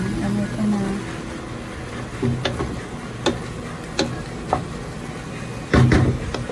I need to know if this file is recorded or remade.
recorded